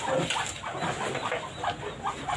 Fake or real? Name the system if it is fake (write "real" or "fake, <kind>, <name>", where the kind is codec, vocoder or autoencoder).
real